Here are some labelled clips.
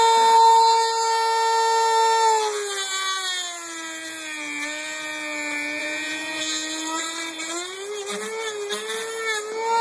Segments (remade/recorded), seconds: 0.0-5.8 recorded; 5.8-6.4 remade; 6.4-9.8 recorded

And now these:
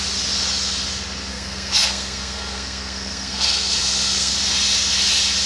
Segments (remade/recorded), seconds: 0.0-1.3 recorded; 1.3-4.3 remade; 4.3-5.5 recorded

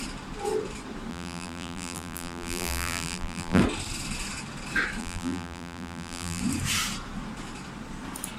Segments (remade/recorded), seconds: 0.0-1.1 recorded; 1.1-3.6 remade; 3.6-5.0 recorded; 5.0-6.4 remade; 6.4-8.4 recorded

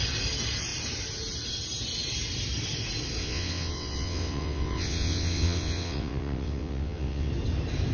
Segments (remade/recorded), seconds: 0.0-3.2 recorded; 3.2-7.3 remade; 7.3-7.9 recorded

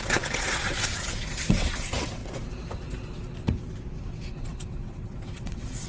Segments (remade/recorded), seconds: 0.0-2.2 remade; 2.2-4.0 recorded; 4.0-5.9 remade

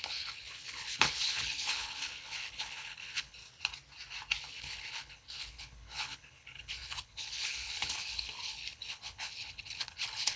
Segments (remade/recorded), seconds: 0.0-3.4 remade; 3.4-4.4 recorded; 4.4-10.4 remade

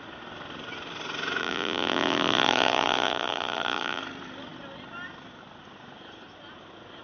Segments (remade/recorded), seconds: 0.0-1.4 recorded; 1.4-4.0 remade; 4.0-7.0 recorded